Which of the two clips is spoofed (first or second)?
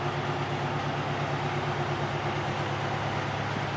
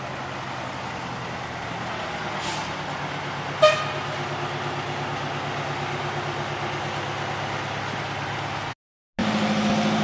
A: first